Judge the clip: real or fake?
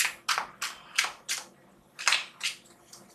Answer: real